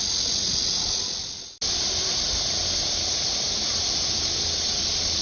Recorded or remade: recorded